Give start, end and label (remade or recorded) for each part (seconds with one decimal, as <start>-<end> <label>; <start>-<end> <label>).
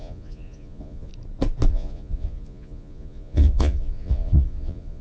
0.0-1.1 remade; 1.1-1.7 recorded; 1.7-5.0 remade